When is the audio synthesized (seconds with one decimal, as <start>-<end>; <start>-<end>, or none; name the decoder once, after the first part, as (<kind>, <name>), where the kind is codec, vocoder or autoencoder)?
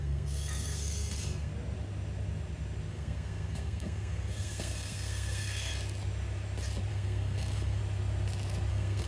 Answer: 0.0-1.5 (codec, SNAC); 2.9-5.7; 6.9-7.8; 8.7-9.1